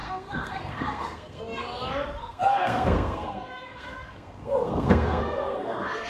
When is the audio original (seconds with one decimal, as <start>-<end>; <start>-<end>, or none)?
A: 1.4-2.2